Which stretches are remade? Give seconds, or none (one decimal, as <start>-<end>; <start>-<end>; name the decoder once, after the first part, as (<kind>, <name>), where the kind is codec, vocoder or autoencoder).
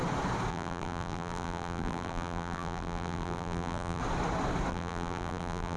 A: 0.5-4.0 (vocoder, BigVGAN v2); 4.7-5.8